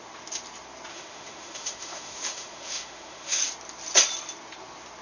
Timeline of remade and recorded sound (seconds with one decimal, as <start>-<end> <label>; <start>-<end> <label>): 0.0-0.9 recorded; 0.9-3.4 remade; 3.4-5.0 recorded